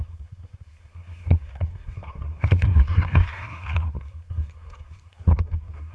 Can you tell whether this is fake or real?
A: fake